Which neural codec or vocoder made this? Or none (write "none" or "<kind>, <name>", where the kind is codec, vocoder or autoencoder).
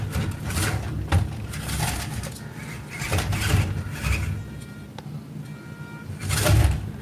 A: none